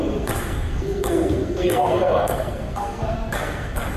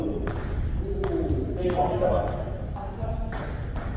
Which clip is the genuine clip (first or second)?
second